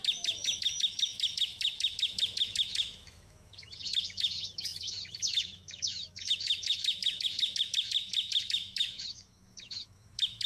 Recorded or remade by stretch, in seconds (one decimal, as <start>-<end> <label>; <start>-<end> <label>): 0.0-10.5 remade